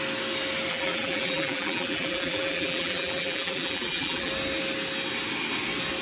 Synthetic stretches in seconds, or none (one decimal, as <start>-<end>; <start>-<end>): 0.7-4.3